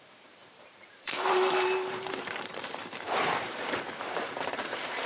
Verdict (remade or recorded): remade